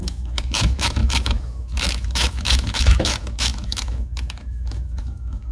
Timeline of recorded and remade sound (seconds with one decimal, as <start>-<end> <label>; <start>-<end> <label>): 0.0-5.5 remade